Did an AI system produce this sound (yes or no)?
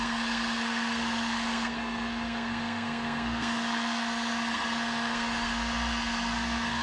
yes